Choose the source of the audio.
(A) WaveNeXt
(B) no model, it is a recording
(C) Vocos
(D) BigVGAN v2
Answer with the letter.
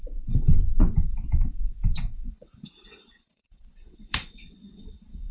A